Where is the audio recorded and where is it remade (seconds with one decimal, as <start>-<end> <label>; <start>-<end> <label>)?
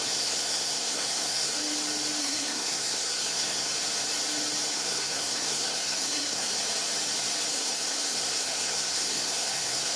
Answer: 0.0-1.5 remade; 1.5-2.2 recorded; 2.2-3.7 remade; 3.7-4.7 recorded; 4.7-6.5 remade; 6.5-7.5 recorded; 7.5-10.0 remade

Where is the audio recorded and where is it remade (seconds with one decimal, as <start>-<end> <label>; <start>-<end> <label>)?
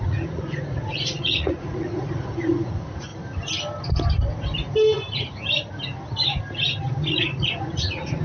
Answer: 0.0-3.1 remade; 3.1-6.9 recorded; 6.9-8.2 remade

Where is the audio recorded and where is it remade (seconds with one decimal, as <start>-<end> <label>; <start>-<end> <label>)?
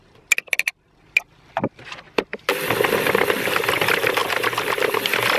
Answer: 0.0-5.4 recorded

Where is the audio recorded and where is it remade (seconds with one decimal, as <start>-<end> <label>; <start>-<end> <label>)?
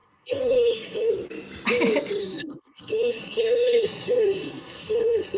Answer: 0.0-1.1 remade; 1.1-2.2 recorded; 2.2-5.4 remade